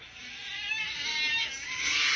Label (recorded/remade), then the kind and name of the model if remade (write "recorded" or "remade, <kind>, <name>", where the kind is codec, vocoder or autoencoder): recorded